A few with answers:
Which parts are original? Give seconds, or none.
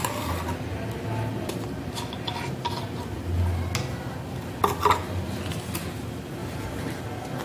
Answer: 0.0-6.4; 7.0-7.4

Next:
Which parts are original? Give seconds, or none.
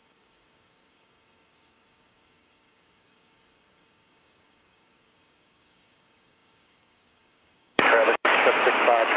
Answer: none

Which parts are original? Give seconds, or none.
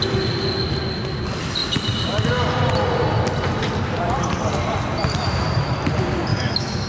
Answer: 0.0-6.3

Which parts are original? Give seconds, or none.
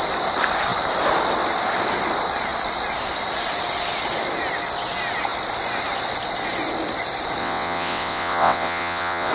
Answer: 0.0-7.4